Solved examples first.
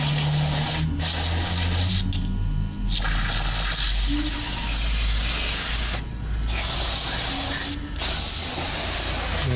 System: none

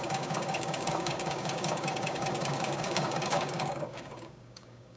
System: codec, DAC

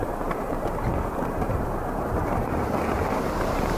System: vocoder, BigVGAN v2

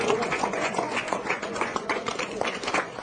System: vocoder, Vocos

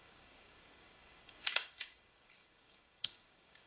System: codec, DAC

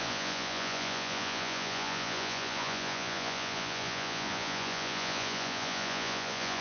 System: vocoder, Vocos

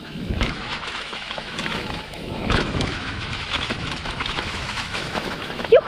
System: autoencoder, DAC-VAE